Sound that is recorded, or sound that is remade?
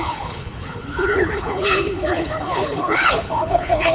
remade